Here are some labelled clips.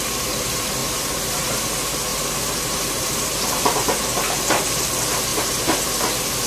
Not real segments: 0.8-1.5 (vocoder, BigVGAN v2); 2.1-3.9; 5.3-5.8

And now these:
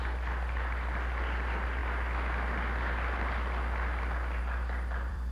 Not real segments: 0.0-1.8 (vocoder, BigVGAN v2); 4.4-5.3

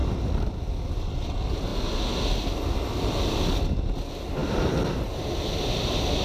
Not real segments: none

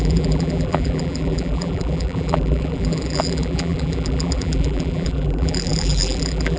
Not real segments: 0.0-6.6 (vocoder, BigVGAN v2)